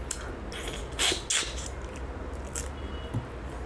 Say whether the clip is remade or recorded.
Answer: recorded